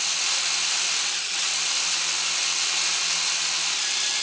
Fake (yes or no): no